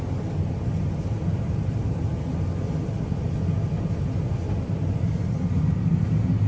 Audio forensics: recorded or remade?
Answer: recorded